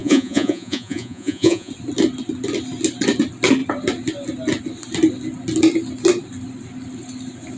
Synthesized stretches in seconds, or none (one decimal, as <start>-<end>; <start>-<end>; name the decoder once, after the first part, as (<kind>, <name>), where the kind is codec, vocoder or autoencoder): 0.0-1.7 (vocoder, Vocos)